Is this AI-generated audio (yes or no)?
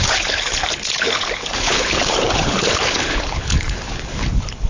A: yes